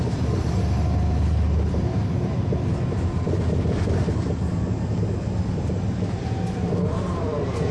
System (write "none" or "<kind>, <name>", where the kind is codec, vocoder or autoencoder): none